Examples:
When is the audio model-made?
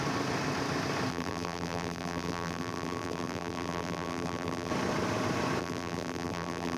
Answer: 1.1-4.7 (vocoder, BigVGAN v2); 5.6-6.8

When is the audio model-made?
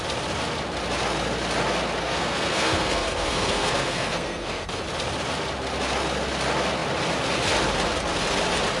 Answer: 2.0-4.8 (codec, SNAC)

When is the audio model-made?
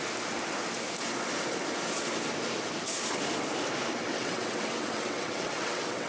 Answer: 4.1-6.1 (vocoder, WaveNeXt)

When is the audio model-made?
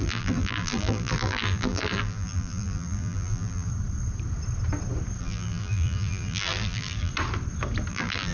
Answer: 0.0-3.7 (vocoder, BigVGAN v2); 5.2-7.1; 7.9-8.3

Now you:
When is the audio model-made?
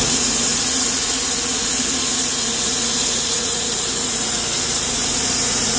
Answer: 0.0-5.8 (vocoder, Vocos)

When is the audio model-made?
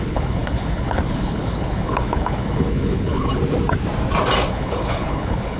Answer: 0.0-3.3 (codec, HILCodec); 4.5-5.6